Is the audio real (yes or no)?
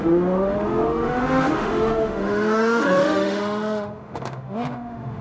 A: no